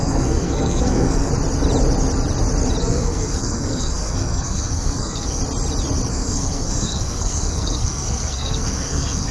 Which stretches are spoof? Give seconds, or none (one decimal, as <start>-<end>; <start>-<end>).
0.0-1.3; 2.8-5.4; 6.1-9.3